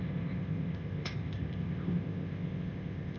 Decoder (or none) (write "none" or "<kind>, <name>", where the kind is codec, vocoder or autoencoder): codec, ZipCodec